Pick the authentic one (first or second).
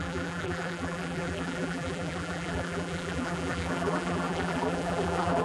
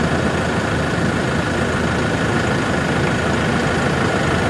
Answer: second